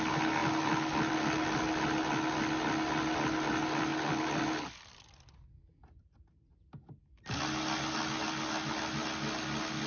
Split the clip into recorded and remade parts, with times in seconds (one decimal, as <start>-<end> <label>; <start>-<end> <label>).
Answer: 0.0-9.9 recorded